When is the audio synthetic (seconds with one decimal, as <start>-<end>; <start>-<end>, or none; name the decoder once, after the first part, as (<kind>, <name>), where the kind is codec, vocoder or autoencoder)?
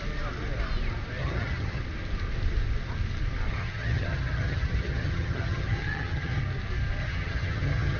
1.2-1.8 (vocoder, HiFi-GAN); 3.5-6.4; 7.0-8.0